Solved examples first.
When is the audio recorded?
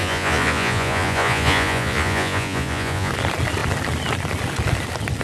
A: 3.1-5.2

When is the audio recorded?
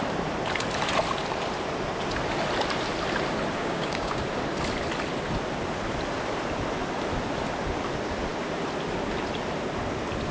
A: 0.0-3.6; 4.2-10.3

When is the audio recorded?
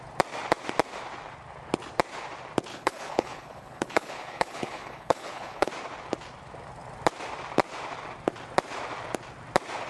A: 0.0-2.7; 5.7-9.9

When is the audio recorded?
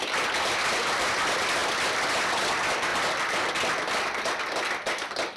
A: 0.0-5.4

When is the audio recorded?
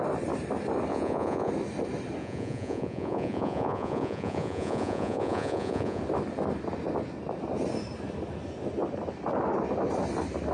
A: 0.0-0.9; 1.5-2.2; 6.0-10.5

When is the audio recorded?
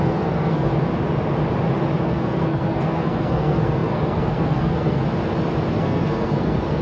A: 0.7-2.0; 5.0-5.7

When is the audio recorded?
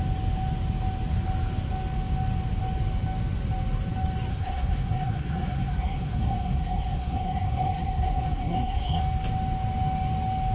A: 0.0-4.3; 9.0-10.5